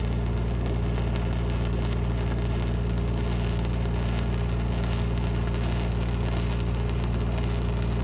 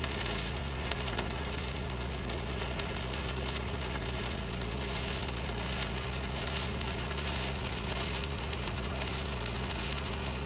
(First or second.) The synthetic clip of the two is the second